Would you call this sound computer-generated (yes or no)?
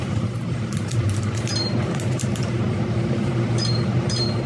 yes